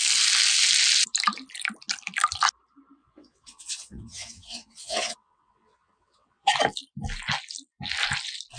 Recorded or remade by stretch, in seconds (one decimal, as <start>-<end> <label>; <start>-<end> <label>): 0.0-3.0 recorded; 3.0-6.5 remade; 6.5-8.6 recorded